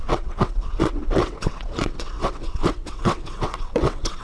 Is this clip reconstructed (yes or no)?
yes